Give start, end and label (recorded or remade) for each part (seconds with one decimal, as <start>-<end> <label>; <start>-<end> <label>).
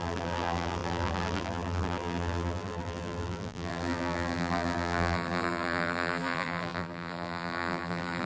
0.0-8.3 remade